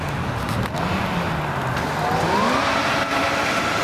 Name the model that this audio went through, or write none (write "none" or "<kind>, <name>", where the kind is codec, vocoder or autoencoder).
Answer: none